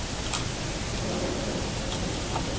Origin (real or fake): real